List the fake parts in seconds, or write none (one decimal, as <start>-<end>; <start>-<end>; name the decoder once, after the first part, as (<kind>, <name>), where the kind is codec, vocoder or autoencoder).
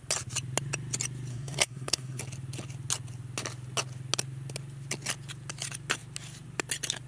1.3-2.2 (codec, SNAC)